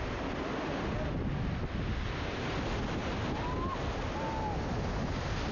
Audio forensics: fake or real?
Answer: real